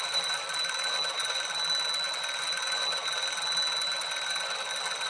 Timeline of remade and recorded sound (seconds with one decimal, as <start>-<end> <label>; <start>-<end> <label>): 0.0-5.1 recorded